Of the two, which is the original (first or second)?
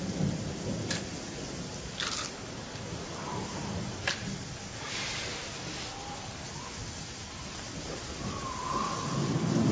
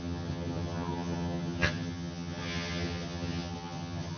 first